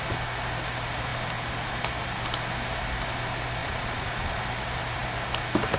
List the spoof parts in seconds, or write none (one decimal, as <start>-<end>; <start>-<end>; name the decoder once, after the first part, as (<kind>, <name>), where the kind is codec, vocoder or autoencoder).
3.6-4.4 (vocoder, Vocos)